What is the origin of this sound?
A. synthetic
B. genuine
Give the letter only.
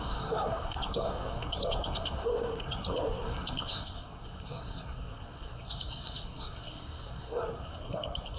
A